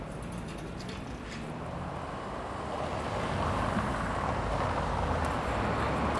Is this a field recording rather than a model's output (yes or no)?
yes